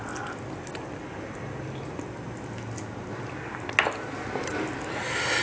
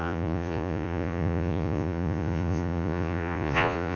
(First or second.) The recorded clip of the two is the first